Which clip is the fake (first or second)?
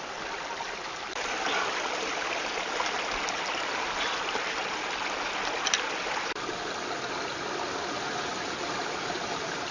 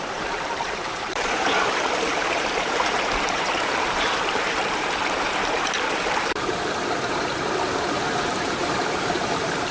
second